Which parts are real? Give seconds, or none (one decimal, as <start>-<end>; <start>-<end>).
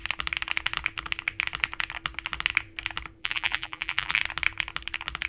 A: 0.0-3.2; 4.2-5.3